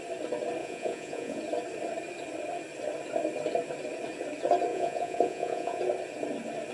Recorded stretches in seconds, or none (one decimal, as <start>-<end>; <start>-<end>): 0.0-0.6; 1.4-4.7; 5.8-6.7